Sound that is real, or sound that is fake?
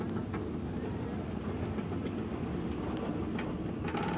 real